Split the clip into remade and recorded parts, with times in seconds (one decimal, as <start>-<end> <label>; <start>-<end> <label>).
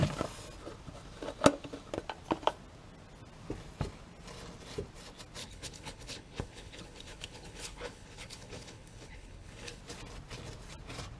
0.0-5.4 recorded; 5.4-9.8 remade; 9.8-11.2 recorded